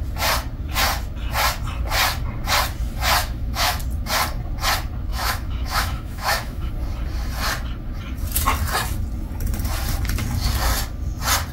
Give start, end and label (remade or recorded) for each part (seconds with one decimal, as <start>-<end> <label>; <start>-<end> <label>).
0.0-3.2 recorded; 3.2-3.7 remade; 3.7-5.1 recorded; 5.1-6.7 remade; 6.7-11.5 recorded